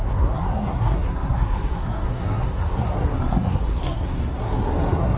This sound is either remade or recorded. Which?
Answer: remade